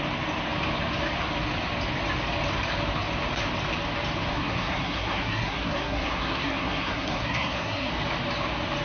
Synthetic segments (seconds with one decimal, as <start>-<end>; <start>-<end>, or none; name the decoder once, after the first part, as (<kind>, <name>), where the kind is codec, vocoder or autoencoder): 4.3-7.9 (codec, SNAC)